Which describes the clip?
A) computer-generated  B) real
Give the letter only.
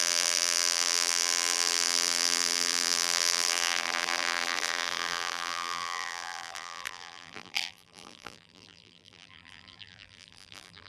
A